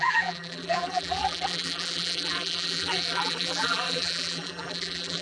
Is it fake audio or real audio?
fake